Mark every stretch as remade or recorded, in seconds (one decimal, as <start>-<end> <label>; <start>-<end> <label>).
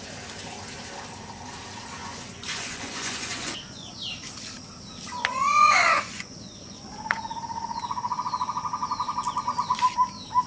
0.0-2.0 recorded; 2.0-3.9 remade; 3.9-5.3 recorded; 5.3-7.3 remade; 7.3-10.5 recorded